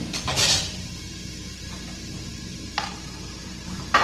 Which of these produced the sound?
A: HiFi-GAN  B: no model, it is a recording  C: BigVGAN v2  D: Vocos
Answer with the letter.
C